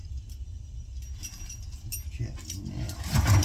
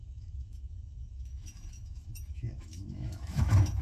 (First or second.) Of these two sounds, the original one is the first